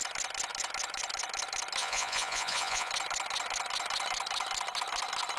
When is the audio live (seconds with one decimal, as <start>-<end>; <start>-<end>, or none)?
0.0-1.8; 2.9-5.4